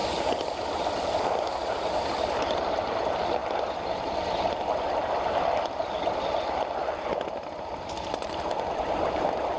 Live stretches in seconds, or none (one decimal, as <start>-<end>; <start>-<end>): 0.0-9.6